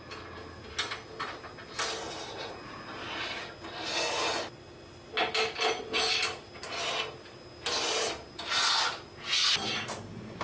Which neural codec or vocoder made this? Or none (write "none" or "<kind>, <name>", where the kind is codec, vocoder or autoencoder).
none